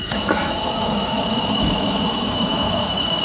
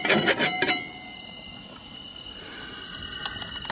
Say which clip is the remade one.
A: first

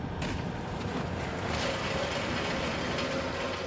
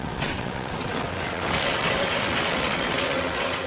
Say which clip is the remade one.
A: second